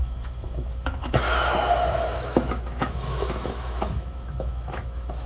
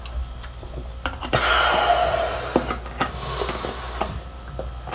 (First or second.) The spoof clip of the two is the first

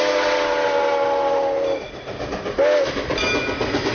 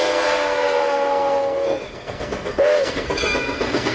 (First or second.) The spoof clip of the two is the second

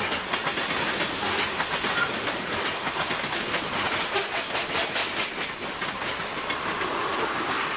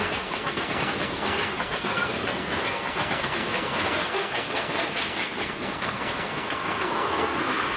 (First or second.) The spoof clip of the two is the second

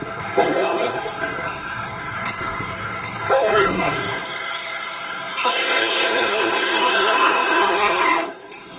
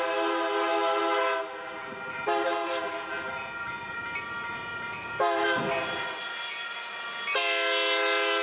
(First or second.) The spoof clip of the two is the first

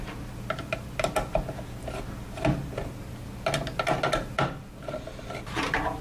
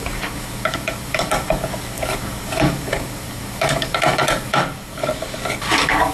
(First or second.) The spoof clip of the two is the second